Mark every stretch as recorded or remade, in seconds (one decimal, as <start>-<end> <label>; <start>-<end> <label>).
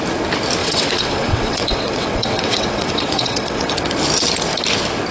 0.0-0.6 recorded; 0.6-3.7 remade; 3.7-5.1 recorded